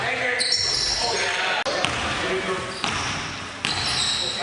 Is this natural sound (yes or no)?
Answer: yes